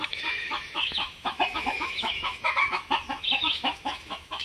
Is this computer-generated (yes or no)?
yes